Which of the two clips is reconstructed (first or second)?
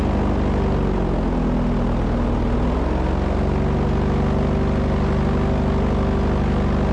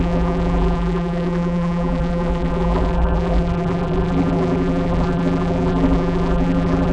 second